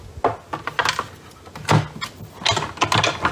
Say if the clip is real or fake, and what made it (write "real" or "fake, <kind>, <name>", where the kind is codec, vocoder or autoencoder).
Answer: real